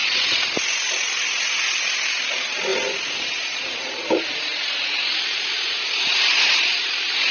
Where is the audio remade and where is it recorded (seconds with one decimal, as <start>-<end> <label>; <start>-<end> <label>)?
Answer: 0.0-2.7 recorded; 2.7-7.3 remade